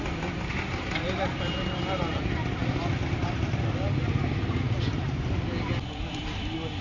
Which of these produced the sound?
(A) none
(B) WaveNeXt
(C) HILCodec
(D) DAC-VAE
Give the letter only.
A